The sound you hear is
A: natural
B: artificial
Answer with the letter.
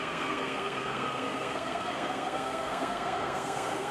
B